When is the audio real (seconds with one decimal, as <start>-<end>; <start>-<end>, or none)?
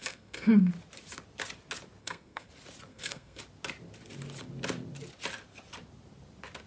0.7-2.0; 2.5-2.9; 3.4-6.7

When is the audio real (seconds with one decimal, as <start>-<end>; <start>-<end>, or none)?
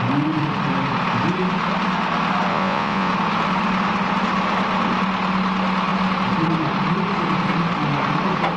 0.0-2.5; 3.1-8.6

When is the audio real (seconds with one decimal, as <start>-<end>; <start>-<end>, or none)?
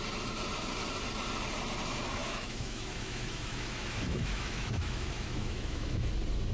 0.0-2.2; 6.1-6.5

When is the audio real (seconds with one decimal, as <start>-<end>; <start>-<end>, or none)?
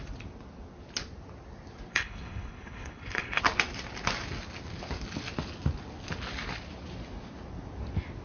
0.0-1.9; 3.4-8.2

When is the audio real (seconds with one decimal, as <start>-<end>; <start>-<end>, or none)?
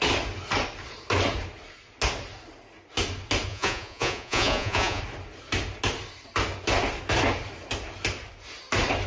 0.0-3.5; 5.0-9.1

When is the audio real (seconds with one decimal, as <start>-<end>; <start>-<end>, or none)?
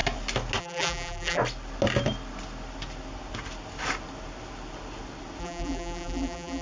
0.0-0.6; 1.4-5.4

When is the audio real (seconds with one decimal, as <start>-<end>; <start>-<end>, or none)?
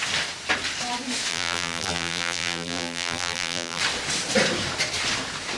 0.0-1.3; 3.8-5.6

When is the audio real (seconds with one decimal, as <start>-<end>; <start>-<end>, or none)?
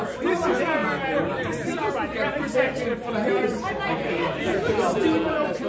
0.0-5.7